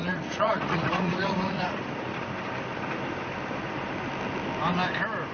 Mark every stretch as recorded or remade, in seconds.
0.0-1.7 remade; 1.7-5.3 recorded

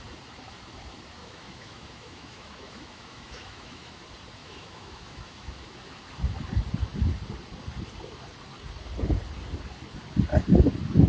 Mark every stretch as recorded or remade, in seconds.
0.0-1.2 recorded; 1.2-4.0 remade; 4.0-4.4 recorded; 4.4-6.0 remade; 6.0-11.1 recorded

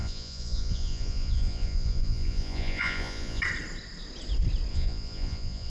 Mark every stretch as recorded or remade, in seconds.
0.0-3.4 remade; 3.4-4.7 recorded; 4.7-5.7 remade